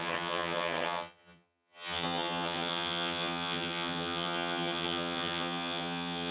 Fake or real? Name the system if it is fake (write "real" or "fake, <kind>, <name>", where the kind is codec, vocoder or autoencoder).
fake, vocoder, HiFi-GAN